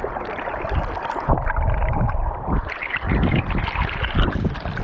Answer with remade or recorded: recorded